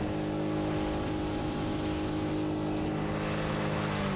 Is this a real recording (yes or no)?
yes